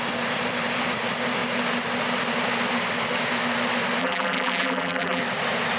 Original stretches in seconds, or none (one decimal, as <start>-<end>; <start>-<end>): 0.0-4.0; 5.2-5.8